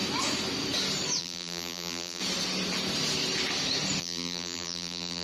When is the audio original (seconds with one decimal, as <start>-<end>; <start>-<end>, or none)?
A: 0.0-1.2; 2.2-4.0